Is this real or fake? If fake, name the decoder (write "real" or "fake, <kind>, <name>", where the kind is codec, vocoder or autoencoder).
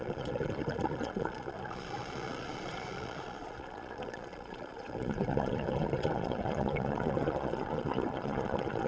fake, vocoder, Vocos